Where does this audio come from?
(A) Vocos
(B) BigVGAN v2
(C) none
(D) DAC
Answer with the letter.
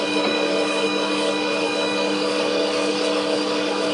D